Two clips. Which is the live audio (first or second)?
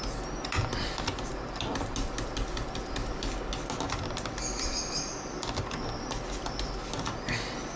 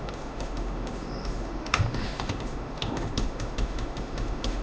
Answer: first